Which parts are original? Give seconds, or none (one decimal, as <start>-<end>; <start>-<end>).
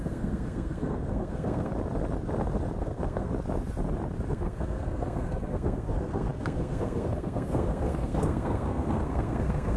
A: 1.7-2.8; 3.3-4.3